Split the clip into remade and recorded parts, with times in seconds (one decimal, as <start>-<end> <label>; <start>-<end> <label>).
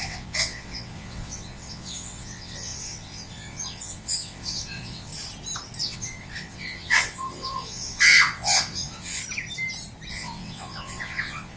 0.0-5.1 remade; 5.1-5.8 recorded; 5.8-9.2 remade; 9.2-10.1 recorded; 10.1-11.6 remade